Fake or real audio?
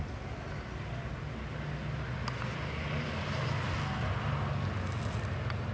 real